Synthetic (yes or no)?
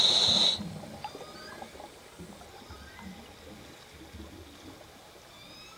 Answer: no